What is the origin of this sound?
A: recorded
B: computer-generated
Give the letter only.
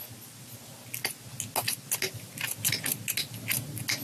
A